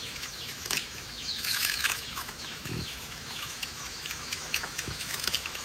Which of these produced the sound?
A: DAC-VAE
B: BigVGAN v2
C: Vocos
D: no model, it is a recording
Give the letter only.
A